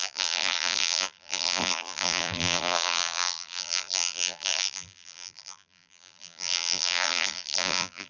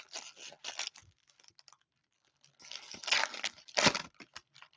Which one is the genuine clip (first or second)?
second